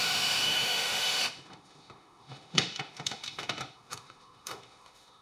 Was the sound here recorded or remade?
remade